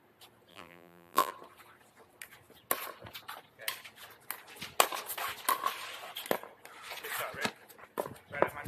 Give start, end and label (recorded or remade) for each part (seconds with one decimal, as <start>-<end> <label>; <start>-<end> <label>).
0.0-0.5 recorded; 0.5-1.3 remade; 1.3-8.7 recorded